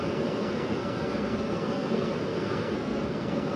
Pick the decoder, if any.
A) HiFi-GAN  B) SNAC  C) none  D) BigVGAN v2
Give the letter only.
B